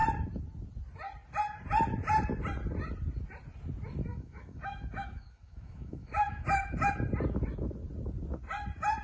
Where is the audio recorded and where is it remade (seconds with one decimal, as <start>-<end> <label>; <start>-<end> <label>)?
0.0-4.1 recorded; 4.1-6.9 remade; 6.9-9.0 recorded